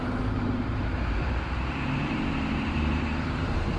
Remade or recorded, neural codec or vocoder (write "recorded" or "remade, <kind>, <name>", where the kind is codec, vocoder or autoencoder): remade, vocoder, BigVGAN v2